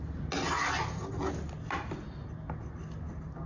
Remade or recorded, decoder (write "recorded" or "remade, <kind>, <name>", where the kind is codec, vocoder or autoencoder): recorded